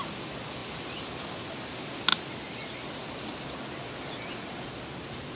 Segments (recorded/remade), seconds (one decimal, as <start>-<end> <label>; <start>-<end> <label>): 0.0-5.4 recorded